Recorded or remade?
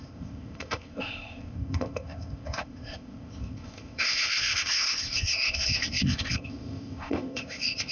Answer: remade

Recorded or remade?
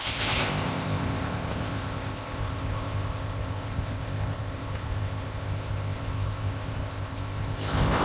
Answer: remade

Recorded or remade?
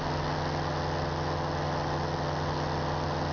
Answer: recorded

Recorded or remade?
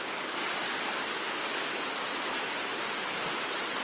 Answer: recorded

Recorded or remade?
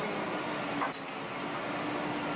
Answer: recorded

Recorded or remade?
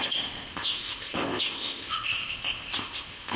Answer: remade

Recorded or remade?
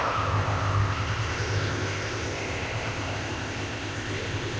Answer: remade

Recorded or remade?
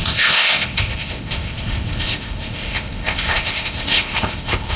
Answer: remade